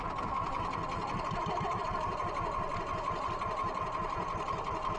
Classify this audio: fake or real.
real